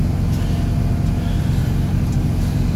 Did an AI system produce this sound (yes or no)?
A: no